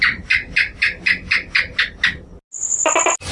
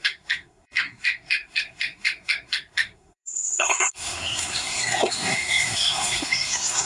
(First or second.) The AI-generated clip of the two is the second